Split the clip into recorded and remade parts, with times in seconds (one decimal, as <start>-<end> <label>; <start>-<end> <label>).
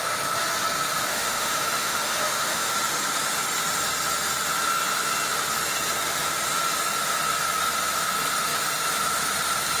0.0-1.1 recorded; 1.1-2.7 remade; 2.7-9.8 recorded